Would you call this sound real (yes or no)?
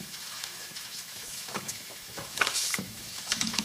no